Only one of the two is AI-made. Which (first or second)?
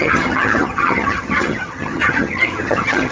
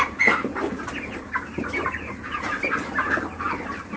first